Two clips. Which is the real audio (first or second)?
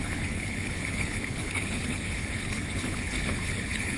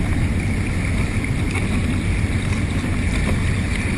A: second